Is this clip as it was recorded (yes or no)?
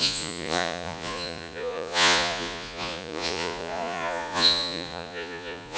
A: no